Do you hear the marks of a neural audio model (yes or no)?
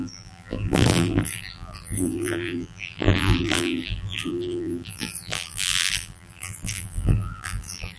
yes